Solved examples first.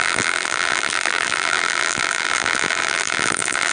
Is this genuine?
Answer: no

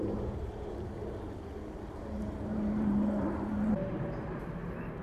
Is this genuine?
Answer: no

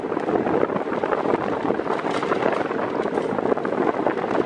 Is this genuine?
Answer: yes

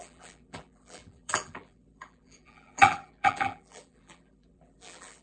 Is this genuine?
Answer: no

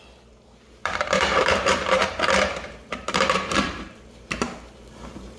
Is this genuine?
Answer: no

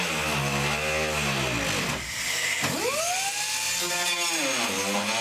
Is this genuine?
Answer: yes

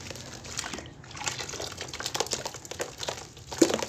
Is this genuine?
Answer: yes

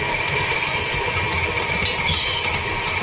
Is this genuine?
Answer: no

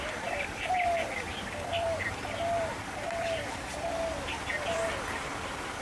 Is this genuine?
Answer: no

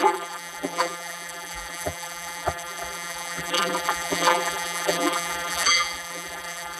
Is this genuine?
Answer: no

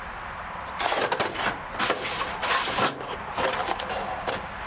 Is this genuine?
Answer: yes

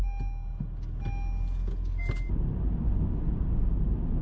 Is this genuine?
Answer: yes